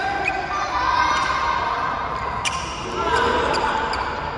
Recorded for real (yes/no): no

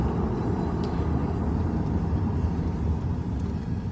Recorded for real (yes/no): yes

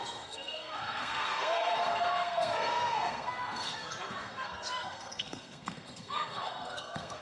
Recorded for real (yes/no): no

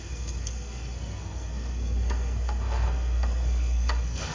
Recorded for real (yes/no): no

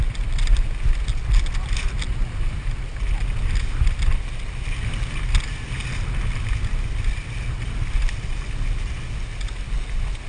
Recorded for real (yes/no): yes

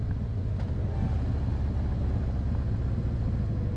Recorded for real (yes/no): yes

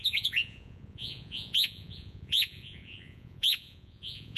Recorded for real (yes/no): no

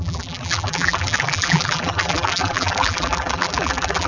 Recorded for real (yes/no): no